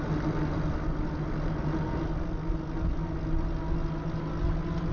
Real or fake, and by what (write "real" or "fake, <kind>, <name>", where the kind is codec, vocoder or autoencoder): real